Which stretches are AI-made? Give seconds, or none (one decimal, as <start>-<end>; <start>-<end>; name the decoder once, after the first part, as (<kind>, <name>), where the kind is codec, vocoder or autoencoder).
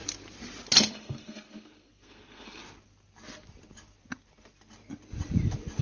0.9-2.6 (codec, SNAC)